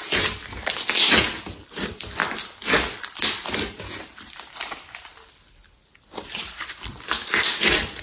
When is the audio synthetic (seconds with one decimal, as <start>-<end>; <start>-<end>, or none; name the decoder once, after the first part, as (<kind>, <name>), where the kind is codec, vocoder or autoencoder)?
1.1-2.2 (vocoder, BigVGAN v2); 6.6-8.0